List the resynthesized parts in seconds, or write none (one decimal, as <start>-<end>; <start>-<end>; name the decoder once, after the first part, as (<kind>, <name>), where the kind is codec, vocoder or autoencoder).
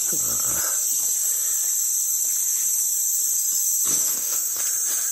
3.9-4.6 (codec, DAC)